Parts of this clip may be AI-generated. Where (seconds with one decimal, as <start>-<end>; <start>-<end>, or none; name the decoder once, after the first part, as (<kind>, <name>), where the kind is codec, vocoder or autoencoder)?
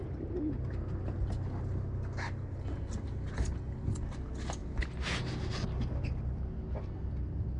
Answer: none